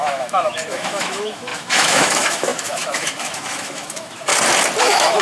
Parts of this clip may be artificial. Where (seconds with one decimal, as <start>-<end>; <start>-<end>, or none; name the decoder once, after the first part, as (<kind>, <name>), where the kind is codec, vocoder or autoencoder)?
0.0-4.3 (autoencoder, DAC-VAE); 4.8-5.2